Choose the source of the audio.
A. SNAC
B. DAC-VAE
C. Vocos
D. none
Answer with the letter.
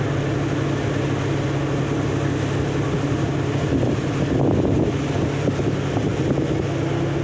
D